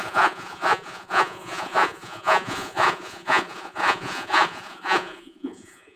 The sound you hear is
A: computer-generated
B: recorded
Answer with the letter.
A